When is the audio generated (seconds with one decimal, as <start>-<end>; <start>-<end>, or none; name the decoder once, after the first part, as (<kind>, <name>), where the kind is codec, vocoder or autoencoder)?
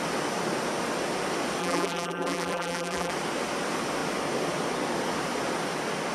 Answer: 1.6-3.1 (vocoder, BigVGAN v2)